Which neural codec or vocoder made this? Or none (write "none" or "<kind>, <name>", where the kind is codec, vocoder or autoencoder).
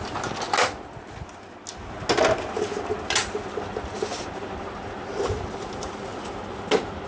none